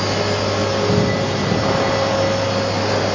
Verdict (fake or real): real